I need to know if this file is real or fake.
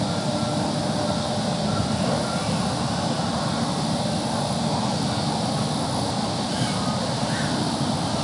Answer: real